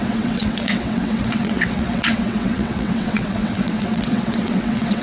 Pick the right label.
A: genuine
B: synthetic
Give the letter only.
B